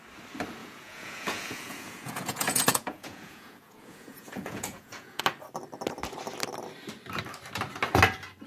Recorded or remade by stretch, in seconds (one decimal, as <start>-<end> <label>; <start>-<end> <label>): 0.0-0.6 recorded; 0.6-5.2 remade; 5.2-8.5 recorded